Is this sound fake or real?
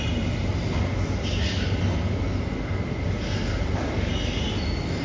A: real